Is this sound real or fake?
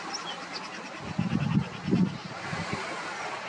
real